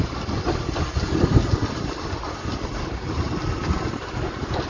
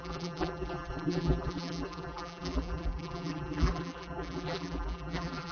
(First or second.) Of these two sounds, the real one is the first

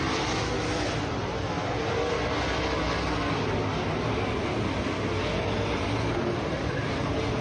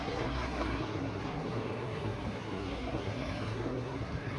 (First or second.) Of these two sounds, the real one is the first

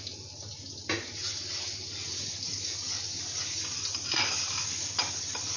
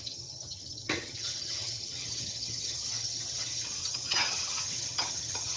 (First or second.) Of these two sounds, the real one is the first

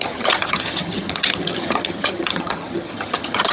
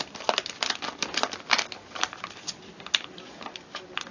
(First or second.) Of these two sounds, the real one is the second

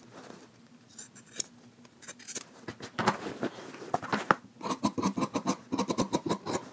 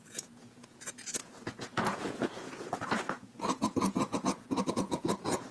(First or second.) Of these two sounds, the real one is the first